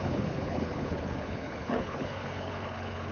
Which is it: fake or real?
fake